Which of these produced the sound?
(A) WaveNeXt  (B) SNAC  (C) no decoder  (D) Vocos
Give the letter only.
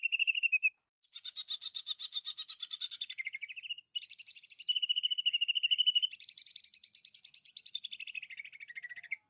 C